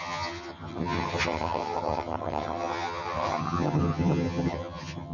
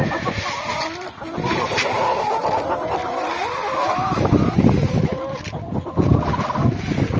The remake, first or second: first